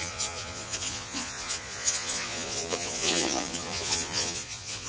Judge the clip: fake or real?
fake